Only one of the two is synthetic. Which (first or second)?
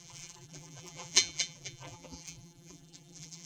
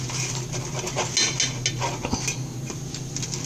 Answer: first